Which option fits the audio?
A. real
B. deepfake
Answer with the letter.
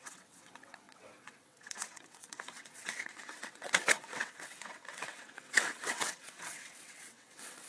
B